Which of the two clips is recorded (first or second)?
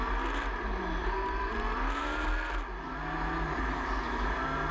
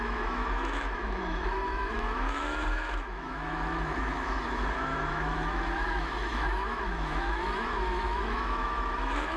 first